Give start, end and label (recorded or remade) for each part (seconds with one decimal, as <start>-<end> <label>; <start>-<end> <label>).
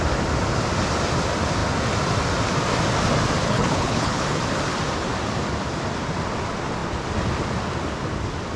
0.0-3.4 recorded; 3.4-4.4 remade; 4.4-8.6 recorded